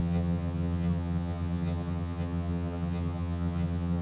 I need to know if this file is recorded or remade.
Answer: remade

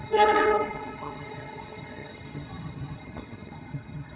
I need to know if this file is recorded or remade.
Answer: remade